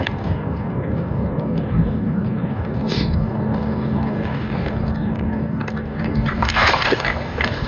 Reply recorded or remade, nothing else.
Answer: remade